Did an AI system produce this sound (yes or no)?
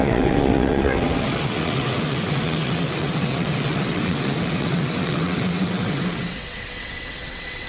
yes